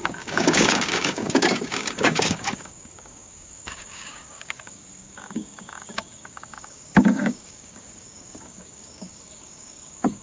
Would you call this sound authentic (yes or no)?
no